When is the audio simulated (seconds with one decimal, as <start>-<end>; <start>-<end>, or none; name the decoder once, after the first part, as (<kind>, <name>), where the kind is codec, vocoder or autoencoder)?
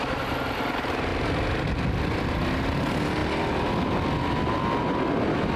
none